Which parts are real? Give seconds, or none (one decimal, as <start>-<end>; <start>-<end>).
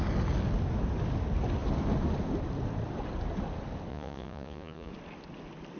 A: 0.0-3.9; 4.9-5.8